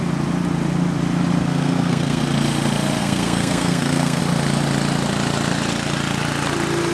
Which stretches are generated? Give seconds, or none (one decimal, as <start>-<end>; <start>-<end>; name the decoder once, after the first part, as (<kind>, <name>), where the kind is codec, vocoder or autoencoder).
1.4-2.2 (codec, SNAC); 3.0-4.2